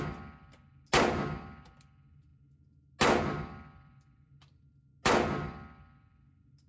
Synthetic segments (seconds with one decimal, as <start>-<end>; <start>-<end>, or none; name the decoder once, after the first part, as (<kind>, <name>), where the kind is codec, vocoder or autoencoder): none